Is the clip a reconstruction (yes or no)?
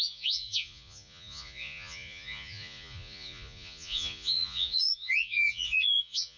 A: yes